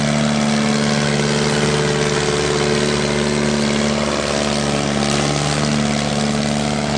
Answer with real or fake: real